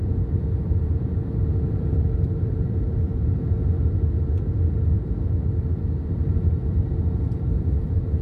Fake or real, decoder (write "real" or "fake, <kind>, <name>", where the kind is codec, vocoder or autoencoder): fake, vocoder, BigVGAN v2